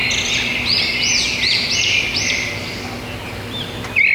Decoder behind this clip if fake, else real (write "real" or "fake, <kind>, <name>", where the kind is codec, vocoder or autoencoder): real